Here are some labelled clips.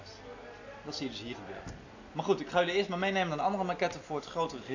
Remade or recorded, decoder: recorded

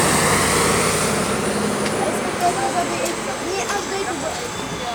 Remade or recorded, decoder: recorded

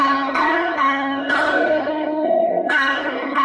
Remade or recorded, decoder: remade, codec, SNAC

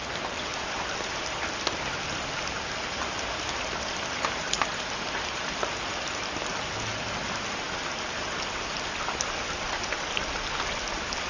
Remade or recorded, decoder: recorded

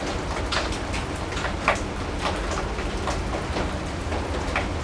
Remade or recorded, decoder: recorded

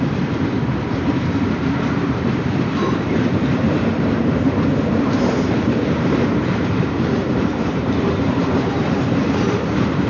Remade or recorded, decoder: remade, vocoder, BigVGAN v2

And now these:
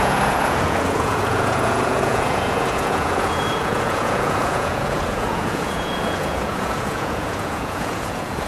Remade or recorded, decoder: remade, vocoder, Vocos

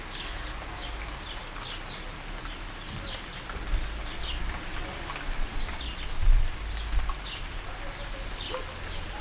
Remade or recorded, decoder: recorded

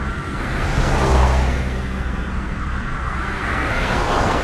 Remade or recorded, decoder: remade, codec, SNAC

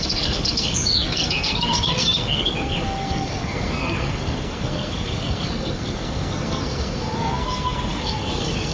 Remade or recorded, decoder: remade, codec, SNAC